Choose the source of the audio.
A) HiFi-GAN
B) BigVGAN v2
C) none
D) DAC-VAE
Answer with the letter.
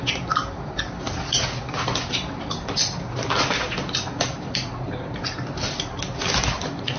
C